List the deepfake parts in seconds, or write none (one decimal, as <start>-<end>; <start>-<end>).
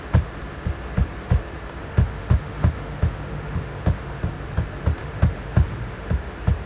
1.8-4.3; 5.0-6.3